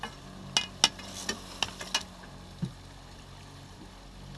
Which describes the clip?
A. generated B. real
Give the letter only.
B